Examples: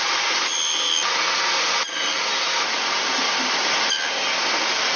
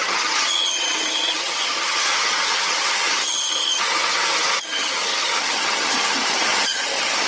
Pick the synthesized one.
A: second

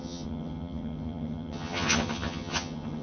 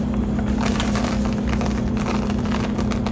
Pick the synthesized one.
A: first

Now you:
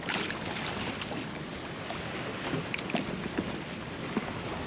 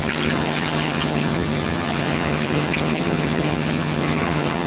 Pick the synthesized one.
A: second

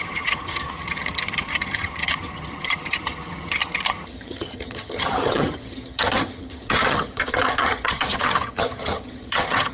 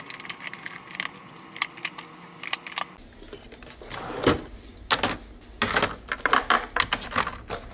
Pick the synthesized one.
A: first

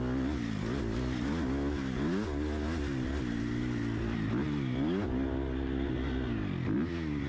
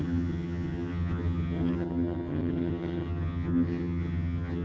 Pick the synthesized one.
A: second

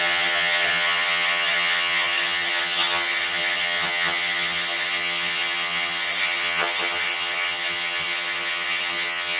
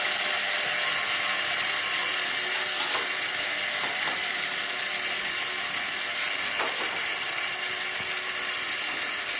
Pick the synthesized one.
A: first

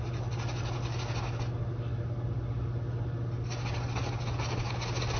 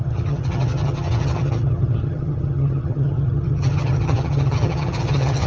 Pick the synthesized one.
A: second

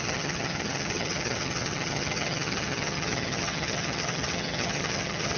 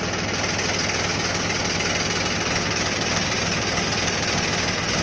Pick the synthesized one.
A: first